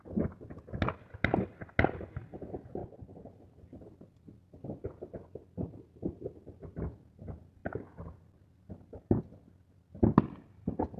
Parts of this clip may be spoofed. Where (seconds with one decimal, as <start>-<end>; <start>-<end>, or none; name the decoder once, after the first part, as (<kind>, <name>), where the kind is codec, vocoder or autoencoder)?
none